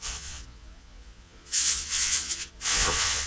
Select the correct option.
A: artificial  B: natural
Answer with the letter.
A